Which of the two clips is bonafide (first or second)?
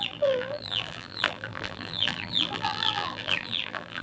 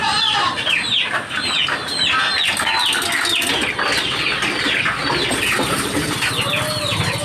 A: second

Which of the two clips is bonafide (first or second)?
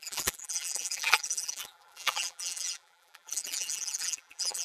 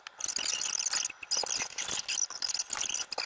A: second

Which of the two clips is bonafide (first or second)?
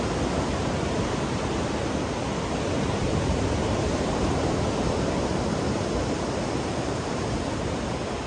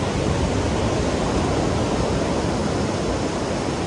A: second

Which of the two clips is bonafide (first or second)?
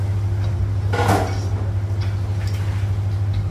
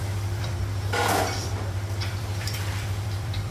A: first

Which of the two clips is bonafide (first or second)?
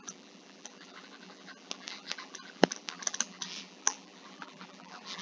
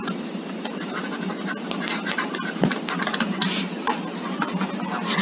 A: second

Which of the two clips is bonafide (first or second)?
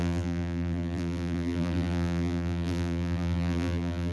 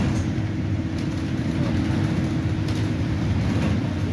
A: second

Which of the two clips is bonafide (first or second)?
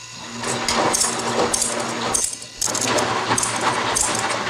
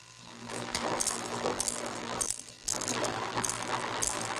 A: first